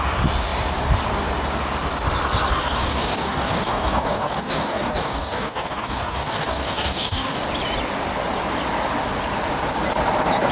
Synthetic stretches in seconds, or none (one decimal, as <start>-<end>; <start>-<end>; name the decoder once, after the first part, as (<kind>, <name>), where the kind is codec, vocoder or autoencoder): 2.5-7.4 (codec, DAC)

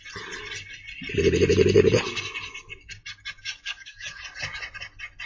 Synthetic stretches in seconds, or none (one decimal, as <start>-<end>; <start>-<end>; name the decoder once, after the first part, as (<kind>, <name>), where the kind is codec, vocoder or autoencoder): 3.4-4.2 (codec, DAC)

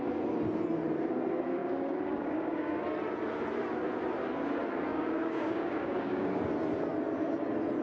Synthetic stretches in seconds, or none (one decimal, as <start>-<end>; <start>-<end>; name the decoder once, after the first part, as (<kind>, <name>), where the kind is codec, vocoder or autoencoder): 1.6-2.8 (codec, DAC); 4.9-6.4

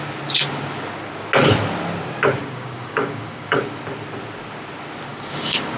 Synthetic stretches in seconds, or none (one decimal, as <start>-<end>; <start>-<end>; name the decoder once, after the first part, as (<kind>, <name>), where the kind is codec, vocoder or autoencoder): 2.4-3.6 (codec, DAC); 5.1-5.8